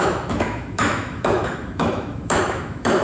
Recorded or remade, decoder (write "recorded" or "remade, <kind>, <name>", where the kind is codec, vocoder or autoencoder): remade, autoencoder, DAC-VAE